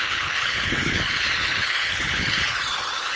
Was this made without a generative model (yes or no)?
no